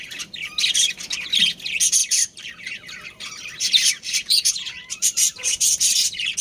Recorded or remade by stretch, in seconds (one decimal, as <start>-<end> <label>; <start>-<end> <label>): 0.0-2.0 recorded; 2.0-5.8 remade; 5.8-6.4 recorded